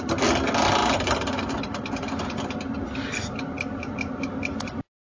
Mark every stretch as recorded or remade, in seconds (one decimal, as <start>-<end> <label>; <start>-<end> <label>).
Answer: 0.0-5.1 recorded